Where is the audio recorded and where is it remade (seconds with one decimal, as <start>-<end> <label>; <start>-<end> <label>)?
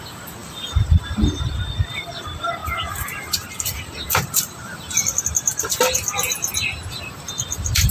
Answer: 0.0-0.4 recorded; 0.4-1.4 remade; 1.4-2.6 recorded; 2.6-5.2 remade; 5.2-7.9 recorded